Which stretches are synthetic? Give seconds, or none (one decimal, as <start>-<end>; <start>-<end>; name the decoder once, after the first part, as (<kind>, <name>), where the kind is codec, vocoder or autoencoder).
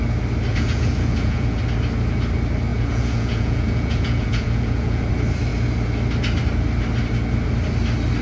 0.5-1.6 (vocoder, Vocos); 2.7-5.1